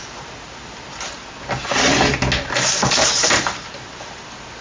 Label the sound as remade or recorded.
recorded